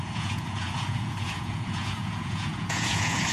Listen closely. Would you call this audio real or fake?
fake